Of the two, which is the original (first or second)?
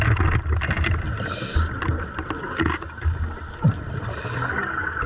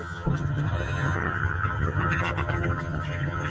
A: first